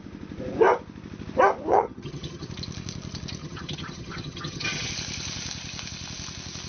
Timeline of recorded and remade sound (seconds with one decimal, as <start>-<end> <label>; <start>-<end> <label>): 0.0-1.7 recorded; 1.7-2.5 remade; 2.5-3.4 recorded; 3.4-4.9 remade; 4.9-6.7 recorded